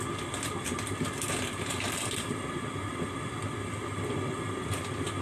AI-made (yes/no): no